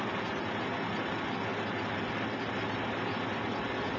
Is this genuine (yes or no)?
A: yes